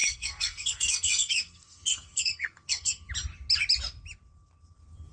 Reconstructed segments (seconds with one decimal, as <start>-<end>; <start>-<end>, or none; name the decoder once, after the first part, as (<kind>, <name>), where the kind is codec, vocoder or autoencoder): 0.0-3.1 (codec, SNAC)